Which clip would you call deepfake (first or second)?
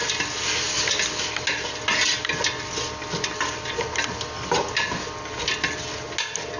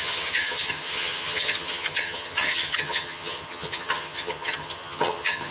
second